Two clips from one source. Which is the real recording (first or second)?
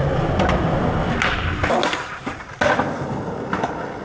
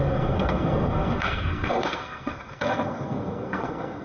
first